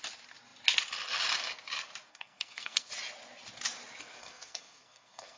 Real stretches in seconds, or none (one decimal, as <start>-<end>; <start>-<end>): 0.0-2.1; 2.9-4.2